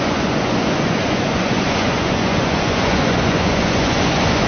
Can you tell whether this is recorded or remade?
remade